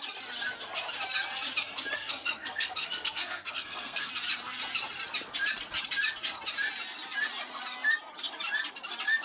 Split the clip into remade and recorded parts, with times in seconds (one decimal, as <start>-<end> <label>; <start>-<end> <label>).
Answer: 0.0-2.0 recorded; 2.0-4.1 remade; 4.1-9.2 recorded